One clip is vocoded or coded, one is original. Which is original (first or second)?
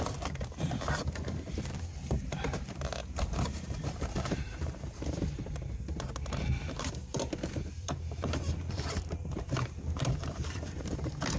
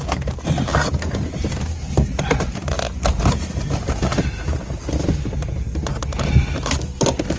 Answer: second